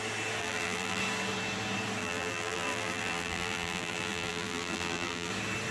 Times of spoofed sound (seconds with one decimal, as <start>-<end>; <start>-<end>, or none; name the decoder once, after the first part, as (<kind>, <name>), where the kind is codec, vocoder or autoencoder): 0.4-1.0 (vocoder, BigVGAN v2); 2.0-5.3

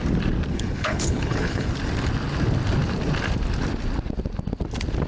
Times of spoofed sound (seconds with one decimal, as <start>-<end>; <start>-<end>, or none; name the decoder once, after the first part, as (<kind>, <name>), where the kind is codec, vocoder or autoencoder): 0.5-1.7 (codec, HILCodec)

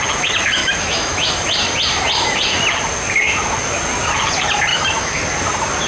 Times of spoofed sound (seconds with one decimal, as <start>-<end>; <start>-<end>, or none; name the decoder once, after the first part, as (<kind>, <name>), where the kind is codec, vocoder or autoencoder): 0.6-1.3 (autoencoder, DAC-VAE); 4.7-5.2

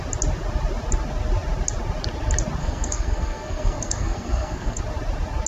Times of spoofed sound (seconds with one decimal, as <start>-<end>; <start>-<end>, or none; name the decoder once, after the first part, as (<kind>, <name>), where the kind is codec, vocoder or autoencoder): 2.6-4.8 (codec, SNAC)

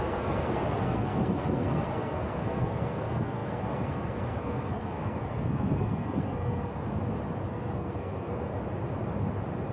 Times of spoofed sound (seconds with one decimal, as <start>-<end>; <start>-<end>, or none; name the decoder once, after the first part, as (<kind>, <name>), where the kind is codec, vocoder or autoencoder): 0.0-6.7 (codec, SNAC); 7.5-8.5

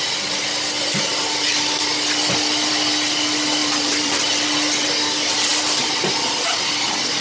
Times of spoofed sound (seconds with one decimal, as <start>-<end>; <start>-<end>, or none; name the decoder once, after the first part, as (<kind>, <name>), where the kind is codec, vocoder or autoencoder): 3.6-4.2 (vocoder, BigVGAN v2); 5.5-6.0